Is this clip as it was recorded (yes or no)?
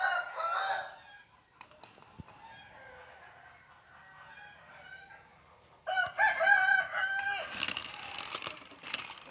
yes